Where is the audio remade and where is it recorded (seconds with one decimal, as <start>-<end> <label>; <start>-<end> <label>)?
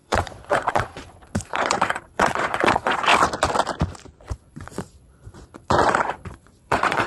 0.0-3.1 remade; 3.1-4.3 recorded; 4.3-7.1 remade